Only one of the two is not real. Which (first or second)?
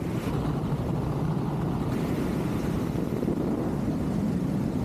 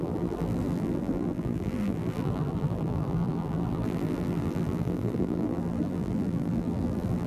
second